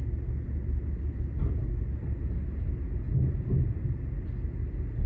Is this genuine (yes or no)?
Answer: yes